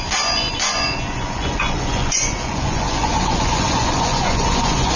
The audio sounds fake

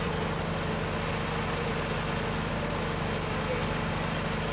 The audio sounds real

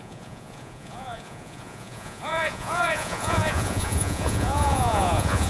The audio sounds fake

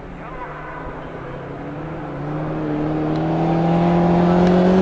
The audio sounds real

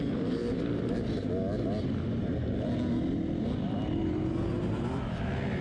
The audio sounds real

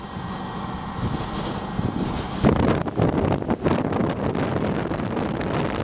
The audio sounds real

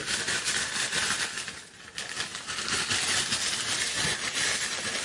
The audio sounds real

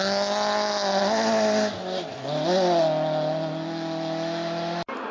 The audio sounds real